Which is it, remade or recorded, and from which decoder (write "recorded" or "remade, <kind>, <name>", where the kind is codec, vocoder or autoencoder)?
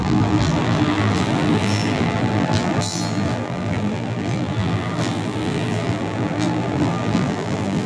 remade, vocoder, BigVGAN v2